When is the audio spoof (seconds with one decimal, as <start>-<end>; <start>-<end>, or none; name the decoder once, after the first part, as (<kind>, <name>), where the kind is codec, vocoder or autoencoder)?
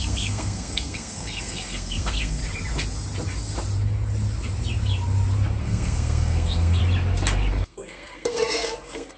0.0-2.4 (codec, SNAC); 5.6-6.8; 7.5-9.2